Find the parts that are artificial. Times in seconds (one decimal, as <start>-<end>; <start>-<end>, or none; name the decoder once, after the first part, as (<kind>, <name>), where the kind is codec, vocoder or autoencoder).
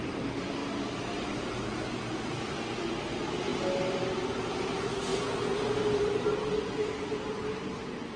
none